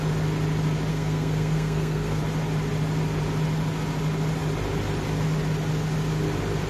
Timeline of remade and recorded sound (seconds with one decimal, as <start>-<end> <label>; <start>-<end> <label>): 0.0-0.9 recorded; 0.9-2.2 remade; 2.2-6.7 recorded